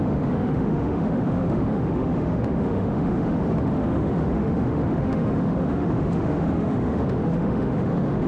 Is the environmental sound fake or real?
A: fake